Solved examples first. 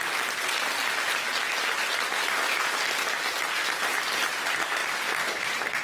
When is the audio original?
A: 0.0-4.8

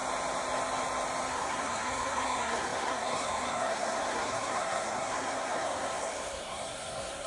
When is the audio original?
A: 0.0-1.3

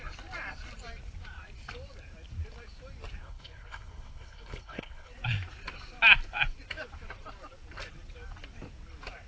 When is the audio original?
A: 0.0-3.2; 5.1-9.3

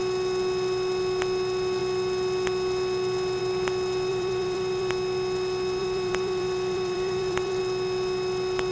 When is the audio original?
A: 0.0-4.1; 4.9-5.8; 7.6-8.7